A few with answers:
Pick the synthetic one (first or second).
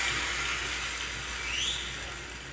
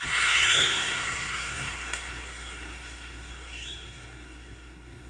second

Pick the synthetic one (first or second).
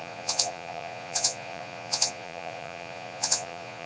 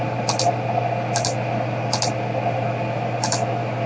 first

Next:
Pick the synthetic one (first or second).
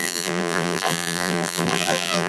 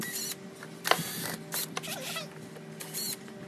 first